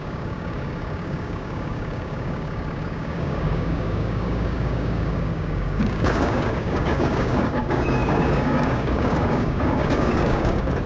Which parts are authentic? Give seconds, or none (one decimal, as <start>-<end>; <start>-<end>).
none